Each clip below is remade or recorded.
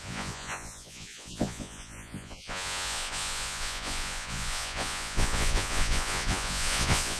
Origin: remade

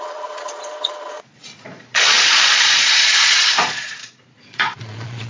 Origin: remade